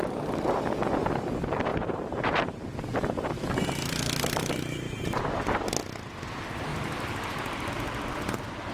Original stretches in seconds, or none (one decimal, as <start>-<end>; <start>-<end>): 0.0-1.7; 5.2-6.7; 7.7-8.7